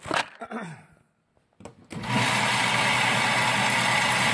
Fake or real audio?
real